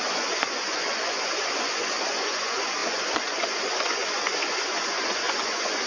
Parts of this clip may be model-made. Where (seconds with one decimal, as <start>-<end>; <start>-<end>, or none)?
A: 0.0-5.9